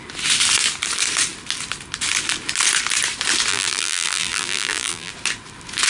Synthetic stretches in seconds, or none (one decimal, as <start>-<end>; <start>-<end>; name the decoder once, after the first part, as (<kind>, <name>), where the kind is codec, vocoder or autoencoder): 3.5-5.1 (vocoder, BigVGAN v2)